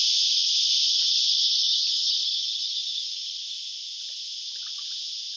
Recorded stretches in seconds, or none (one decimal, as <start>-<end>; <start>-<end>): 0.0-1.7; 2.2-5.4